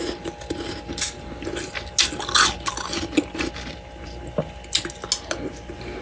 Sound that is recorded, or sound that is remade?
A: recorded